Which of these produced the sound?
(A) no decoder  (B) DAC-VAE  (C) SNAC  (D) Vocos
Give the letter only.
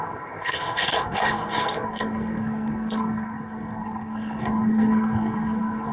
C